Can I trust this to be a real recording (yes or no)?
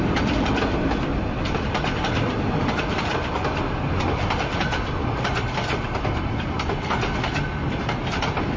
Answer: yes